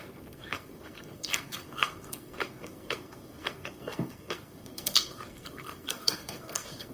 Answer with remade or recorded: remade